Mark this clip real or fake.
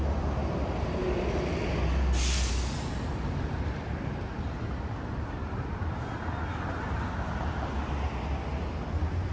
real